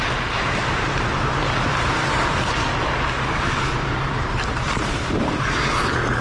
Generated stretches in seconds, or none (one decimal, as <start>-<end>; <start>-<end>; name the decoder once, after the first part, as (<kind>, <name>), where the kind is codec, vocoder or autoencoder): 0.0-1.7 (vocoder, BigVGAN v2); 4.0-6.2

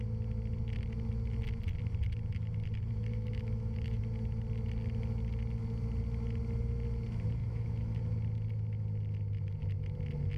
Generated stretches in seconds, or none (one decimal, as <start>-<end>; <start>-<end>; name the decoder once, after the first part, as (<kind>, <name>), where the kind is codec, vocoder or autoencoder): 3.1-4.0 (autoencoder, DAC-VAE); 7.4-8.0

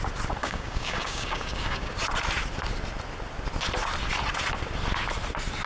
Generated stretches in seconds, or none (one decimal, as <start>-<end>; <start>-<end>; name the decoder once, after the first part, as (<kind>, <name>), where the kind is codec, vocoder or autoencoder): 0.4-1.9 (codec, DAC)